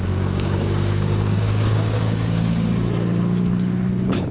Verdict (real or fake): fake